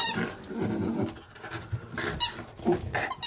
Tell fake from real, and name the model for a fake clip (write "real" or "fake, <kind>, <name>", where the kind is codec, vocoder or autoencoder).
real